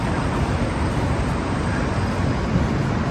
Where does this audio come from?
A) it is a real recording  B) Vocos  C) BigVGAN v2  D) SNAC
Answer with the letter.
A